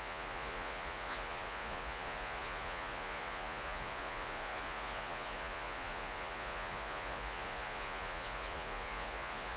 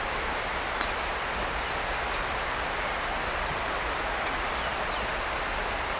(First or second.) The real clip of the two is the second